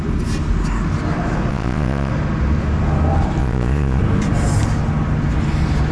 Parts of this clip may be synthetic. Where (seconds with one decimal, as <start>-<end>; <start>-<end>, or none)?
1.5-2.1; 3.4-4.0